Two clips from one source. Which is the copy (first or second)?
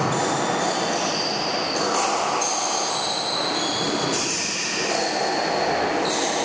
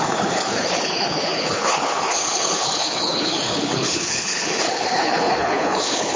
second